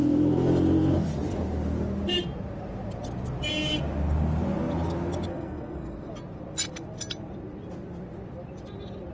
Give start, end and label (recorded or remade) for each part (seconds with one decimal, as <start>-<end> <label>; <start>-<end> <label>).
0.0-5.3 recorded; 5.3-6.1 remade; 6.1-9.1 recorded